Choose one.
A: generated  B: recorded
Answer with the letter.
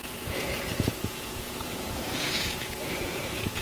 A